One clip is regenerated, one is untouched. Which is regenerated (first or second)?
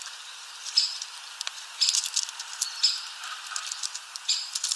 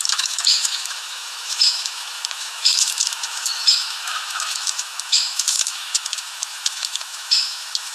second